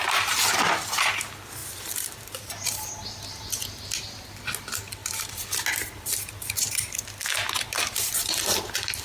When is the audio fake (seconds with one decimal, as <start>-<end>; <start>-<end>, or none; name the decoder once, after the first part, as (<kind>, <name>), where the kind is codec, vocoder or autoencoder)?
1.6-2.5 (vocoder, BigVGAN v2)